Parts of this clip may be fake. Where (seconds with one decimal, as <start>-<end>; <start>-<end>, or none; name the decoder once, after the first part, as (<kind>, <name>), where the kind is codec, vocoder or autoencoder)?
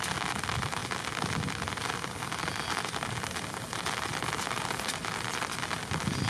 none